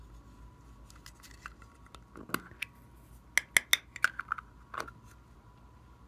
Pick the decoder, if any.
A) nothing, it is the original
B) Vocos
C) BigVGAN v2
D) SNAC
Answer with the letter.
A